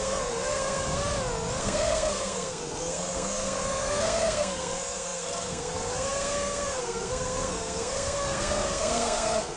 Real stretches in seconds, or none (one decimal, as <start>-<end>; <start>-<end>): 1.0-1.6